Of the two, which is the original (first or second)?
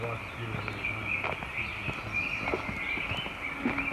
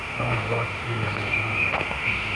first